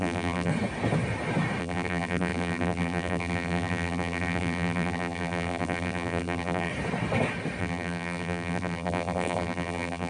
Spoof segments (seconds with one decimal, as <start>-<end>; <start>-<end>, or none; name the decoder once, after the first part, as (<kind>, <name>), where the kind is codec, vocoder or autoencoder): 0.0-0.5 (vocoder, BigVGAN v2); 1.6-6.7; 7.6-10.1